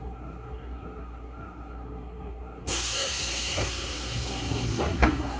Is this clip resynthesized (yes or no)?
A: yes